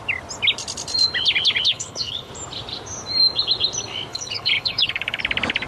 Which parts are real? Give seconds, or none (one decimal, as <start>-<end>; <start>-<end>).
0.0-1.7; 2.3-4.1; 5.2-5.7